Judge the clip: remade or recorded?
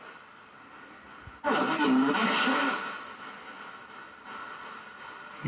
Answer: recorded